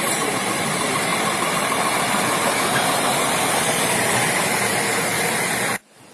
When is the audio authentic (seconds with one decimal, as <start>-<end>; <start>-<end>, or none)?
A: 1.1-2.0; 4.7-6.1